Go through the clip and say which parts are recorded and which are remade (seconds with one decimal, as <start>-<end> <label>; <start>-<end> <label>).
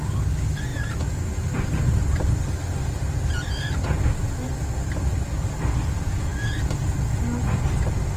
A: 0.0-8.2 recorded